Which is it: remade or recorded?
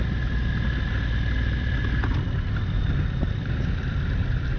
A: recorded